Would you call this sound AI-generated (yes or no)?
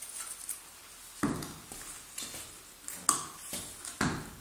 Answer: no